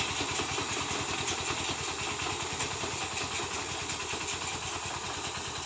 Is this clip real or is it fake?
real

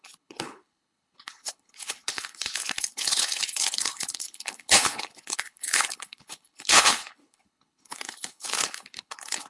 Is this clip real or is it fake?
fake